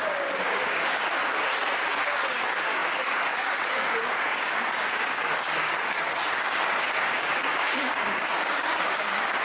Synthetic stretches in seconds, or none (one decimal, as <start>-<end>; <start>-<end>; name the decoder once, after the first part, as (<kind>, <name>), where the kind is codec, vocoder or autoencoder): 0.0-1.2 (codec, DAC); 1.9-9.4